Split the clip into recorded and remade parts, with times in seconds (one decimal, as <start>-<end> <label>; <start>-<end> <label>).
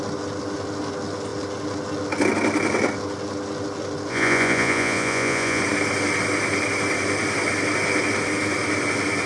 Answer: 0.0-4.1 recorded; 4.1-5.6 remade; 5.6-9.3 recorded